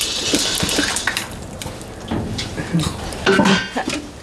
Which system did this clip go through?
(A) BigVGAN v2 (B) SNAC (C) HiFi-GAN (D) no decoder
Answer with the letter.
D